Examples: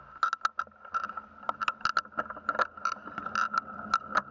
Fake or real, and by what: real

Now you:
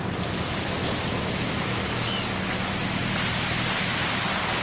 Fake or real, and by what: real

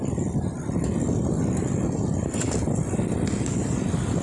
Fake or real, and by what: real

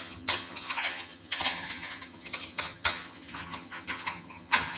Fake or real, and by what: fake, vocoder, HiFi-GAN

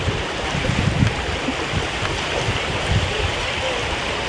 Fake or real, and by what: fake, vocoder, BigVGAN v2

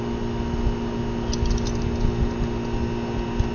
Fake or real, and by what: real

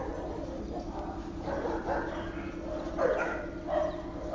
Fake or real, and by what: real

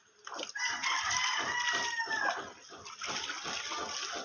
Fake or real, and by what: real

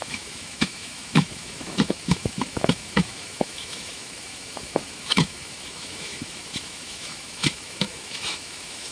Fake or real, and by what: fake, autoencoder, DAC-VAE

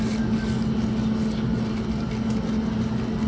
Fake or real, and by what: real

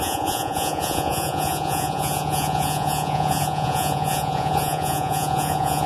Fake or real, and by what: fake, vocoder, Vocos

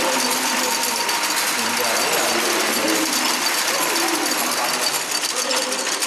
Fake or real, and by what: real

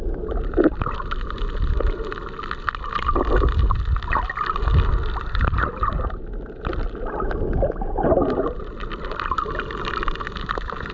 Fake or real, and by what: real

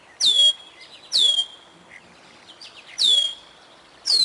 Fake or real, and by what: real